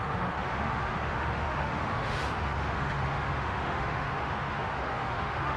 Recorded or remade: remade